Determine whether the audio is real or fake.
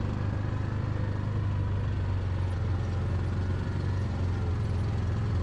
real